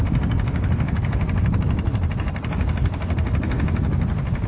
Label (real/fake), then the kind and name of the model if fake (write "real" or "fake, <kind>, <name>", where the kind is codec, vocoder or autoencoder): real